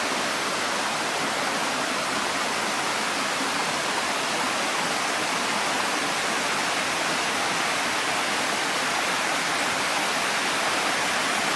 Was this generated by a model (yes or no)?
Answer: no